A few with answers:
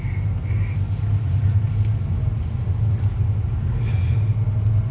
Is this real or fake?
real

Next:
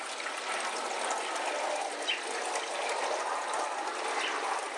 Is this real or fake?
real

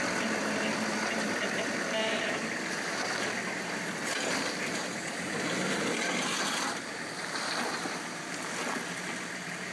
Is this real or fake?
real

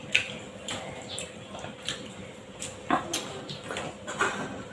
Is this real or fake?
real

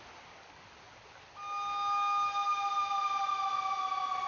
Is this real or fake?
real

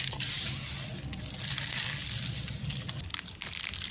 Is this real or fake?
real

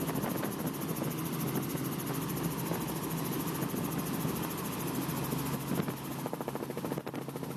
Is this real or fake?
real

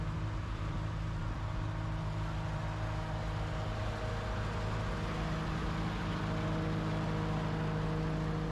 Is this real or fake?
real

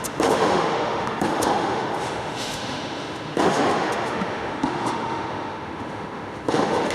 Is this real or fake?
fake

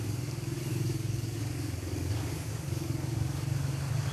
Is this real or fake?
fake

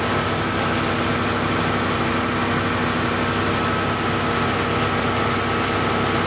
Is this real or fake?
real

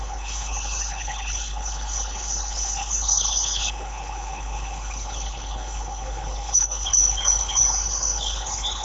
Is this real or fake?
fake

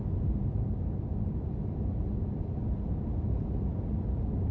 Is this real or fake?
real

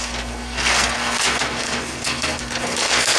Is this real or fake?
fake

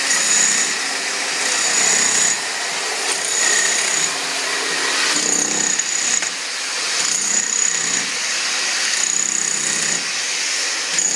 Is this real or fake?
real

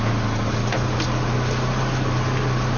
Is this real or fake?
real